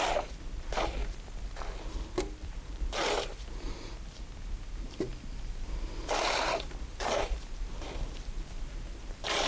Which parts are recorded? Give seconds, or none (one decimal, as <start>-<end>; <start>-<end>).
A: 1.0-2.2